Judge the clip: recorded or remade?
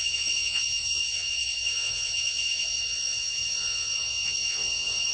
remade